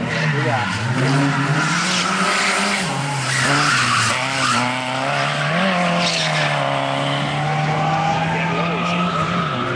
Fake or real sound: real